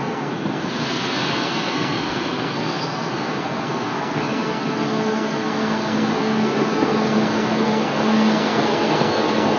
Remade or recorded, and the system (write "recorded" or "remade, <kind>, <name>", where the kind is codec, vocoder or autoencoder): remade, codec, SNAC